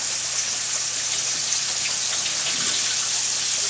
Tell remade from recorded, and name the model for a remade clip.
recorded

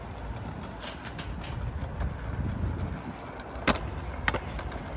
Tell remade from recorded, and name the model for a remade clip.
recorded